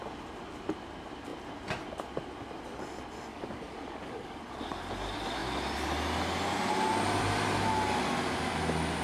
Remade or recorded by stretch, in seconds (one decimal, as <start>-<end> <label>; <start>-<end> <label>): 0.0-3.3 recorded; 3.3-4.4 remade; 4.4-9.0 recorded